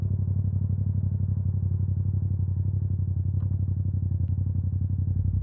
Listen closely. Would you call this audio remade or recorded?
remade